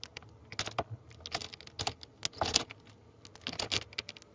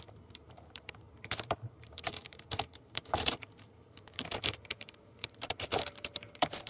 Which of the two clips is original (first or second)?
first